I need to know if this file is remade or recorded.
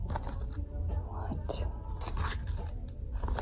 recorded